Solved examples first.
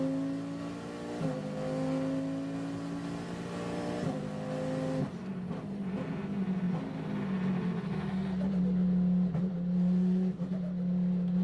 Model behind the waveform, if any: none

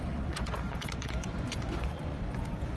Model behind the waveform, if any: vocoder, Vocos